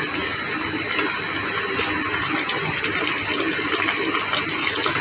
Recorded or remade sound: recorded